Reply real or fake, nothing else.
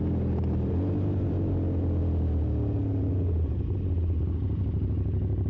real